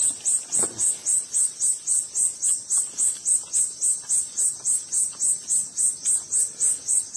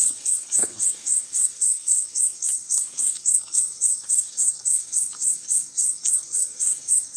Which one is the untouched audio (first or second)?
first